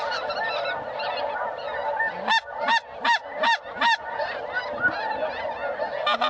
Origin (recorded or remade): recorded